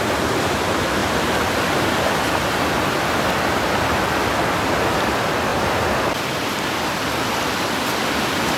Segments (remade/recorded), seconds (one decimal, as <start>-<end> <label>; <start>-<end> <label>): 0.0-8.6 recorded